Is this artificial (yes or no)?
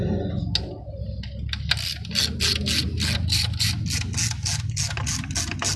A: no